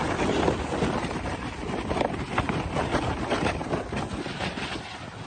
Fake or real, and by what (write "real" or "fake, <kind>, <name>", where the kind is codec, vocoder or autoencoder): real